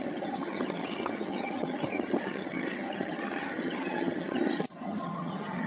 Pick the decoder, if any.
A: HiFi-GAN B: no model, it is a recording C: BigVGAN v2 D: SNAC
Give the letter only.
A